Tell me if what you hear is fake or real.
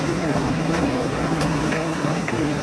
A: fake